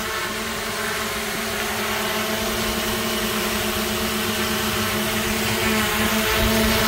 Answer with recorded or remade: recorded